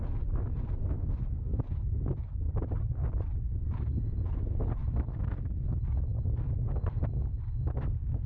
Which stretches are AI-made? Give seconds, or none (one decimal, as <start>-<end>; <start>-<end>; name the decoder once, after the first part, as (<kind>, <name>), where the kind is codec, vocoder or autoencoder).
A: none